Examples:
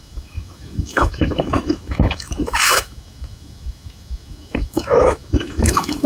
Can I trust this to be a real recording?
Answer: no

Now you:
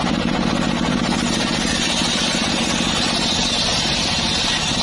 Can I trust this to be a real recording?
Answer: yes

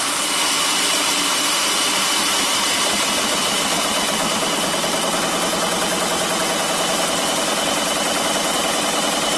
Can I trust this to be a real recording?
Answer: yes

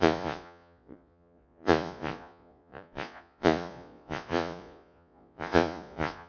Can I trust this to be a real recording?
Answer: no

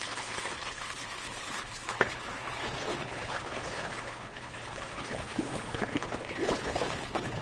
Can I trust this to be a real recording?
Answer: no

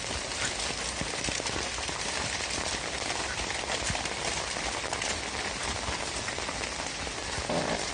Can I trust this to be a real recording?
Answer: yes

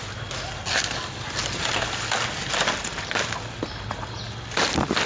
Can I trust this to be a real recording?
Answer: yes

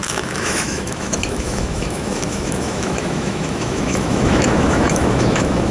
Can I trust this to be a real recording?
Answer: no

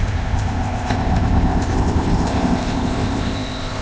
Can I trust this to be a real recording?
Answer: no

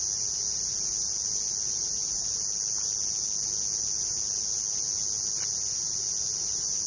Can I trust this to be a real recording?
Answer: yes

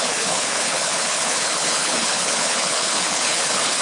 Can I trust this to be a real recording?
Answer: no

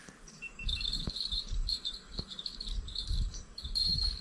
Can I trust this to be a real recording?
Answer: no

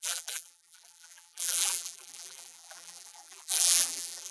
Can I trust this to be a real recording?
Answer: no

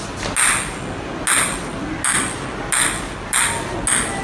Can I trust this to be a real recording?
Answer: yes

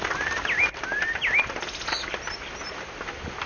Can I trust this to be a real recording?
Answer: yes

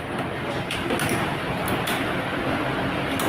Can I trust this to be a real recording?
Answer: yes